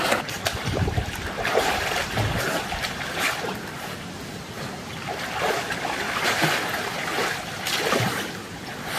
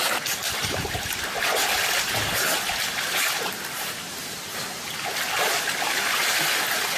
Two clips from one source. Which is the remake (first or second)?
first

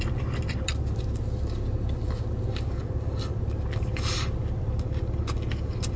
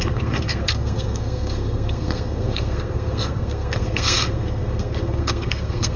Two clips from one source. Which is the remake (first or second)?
second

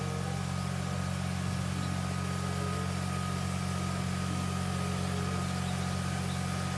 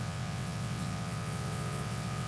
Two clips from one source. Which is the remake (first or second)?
second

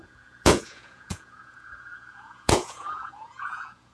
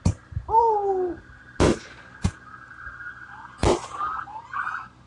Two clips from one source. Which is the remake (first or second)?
first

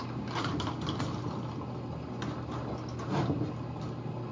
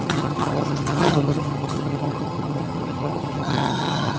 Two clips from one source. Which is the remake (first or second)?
second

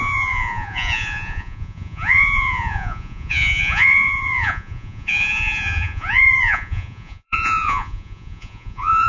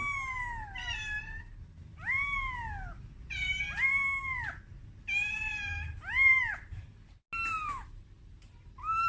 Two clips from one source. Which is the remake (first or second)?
first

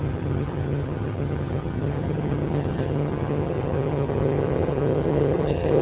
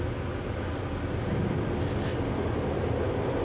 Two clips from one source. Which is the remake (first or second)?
first